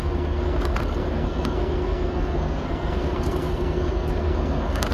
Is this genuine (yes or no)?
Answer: no